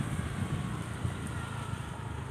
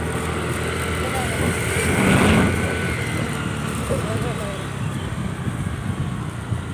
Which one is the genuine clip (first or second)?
second